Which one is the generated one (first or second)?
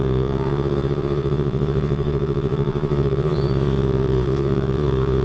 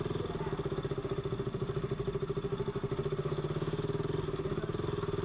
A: first